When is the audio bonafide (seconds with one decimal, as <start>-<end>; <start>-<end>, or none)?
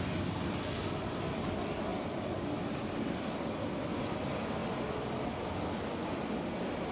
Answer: 0.0-6.9